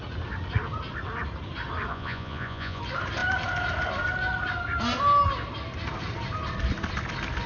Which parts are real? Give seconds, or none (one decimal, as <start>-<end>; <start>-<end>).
0.0-1.9; 2.8-7.5